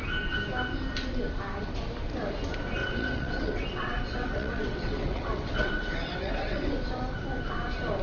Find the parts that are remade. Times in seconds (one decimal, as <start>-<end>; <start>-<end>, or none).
2.8-6.7